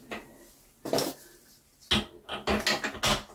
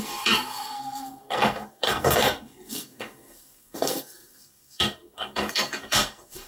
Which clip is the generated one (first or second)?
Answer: second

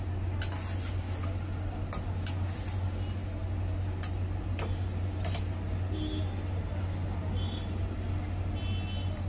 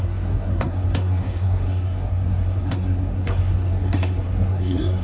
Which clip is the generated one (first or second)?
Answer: second